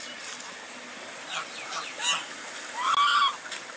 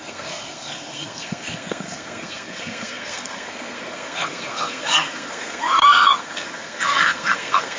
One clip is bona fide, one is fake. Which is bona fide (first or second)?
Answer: first